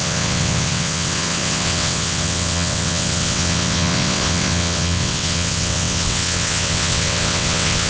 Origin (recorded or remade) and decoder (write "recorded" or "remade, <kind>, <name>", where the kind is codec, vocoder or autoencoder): remade, vocoder, WaveNeXt